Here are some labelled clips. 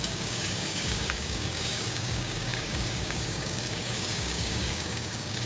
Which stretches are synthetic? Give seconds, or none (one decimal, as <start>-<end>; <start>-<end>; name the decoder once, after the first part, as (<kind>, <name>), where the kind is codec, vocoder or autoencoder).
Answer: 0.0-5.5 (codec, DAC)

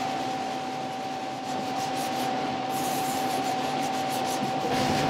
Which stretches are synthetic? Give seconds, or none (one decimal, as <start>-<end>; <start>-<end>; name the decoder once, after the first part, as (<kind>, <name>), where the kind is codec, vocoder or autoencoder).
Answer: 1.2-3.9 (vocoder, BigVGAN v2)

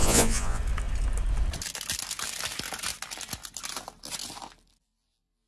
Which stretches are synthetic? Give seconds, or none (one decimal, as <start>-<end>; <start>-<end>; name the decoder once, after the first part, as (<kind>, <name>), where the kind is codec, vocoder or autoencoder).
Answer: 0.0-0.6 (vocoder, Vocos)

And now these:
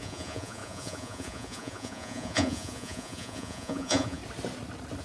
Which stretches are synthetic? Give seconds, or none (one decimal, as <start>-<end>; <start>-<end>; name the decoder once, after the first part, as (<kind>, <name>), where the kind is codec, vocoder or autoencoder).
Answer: 0.0-4.2 (vocoder, Vocos)